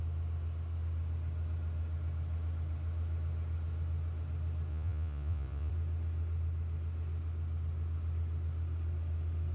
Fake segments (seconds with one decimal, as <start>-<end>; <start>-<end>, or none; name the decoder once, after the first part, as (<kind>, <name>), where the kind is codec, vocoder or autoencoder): 4.7-5.7 (vocoder, Vocos)